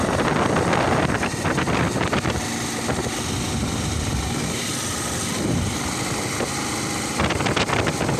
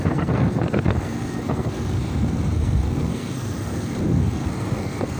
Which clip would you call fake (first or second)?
second